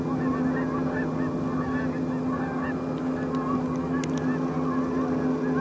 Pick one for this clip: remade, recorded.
recorded